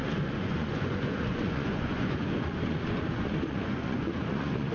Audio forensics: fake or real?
fake